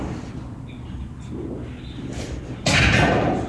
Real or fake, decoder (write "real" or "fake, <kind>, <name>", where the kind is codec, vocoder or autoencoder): real